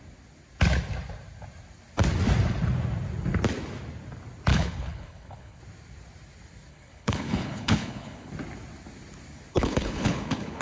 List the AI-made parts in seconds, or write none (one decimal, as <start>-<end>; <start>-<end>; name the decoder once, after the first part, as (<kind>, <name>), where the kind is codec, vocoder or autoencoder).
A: 4.5-5.6 (codec, HILCodec); 6.7-8.3; 9.5-10.6